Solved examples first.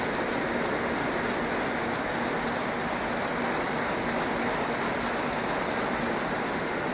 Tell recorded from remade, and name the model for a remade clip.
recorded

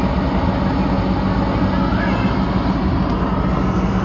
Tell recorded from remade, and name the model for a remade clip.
recorded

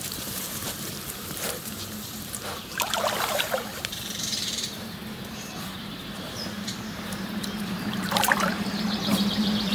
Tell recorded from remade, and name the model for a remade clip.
remade, vocoder, BigVGAN v2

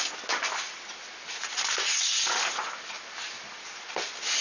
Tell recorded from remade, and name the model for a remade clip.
recorded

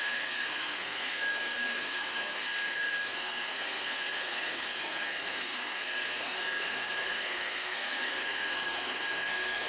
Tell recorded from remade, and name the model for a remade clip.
remade, codec, SNAC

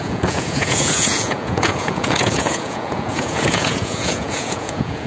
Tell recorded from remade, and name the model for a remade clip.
remade, vocoder, Vocos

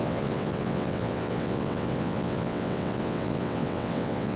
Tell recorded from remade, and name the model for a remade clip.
remade, vocoder, WaveNeXt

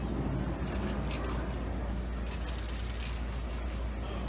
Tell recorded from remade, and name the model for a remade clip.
recorded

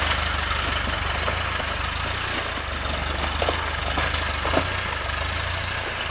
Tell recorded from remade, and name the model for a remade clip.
recorded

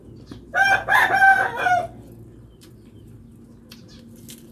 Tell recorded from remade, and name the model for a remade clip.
recorded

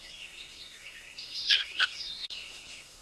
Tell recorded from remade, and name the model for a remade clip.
remade, codec, SNAC